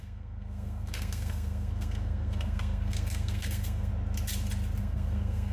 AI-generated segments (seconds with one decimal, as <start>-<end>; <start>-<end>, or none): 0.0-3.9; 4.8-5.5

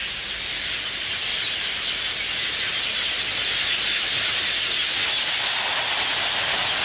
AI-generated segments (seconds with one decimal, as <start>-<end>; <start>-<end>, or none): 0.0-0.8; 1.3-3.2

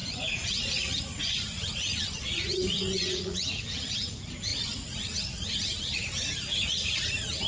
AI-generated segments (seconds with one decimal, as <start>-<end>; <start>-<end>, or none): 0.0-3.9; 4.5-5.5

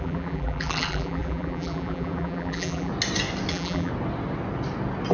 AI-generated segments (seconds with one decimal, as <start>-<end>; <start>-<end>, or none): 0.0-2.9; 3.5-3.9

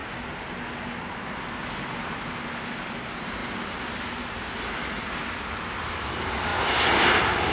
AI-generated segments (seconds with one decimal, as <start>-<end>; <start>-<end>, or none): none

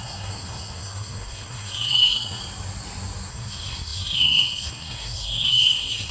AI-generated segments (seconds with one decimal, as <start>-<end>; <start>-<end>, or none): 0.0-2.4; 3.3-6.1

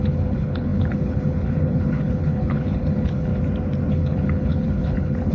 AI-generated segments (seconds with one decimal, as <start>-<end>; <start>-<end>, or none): 0.0-3.3; 3.9-5.3